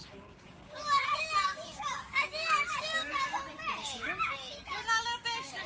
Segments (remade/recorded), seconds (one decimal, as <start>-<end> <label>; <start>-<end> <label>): 0.0-3.4 remade; 3.4-3.8 recorded; 3.8-5.7 remade